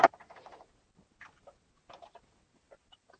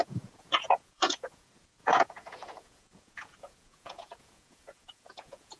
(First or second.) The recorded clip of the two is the first